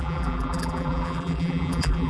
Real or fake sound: fake